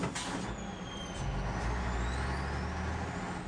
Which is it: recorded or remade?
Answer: recorded